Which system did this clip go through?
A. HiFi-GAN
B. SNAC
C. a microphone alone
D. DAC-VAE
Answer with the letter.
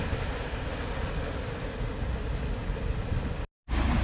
C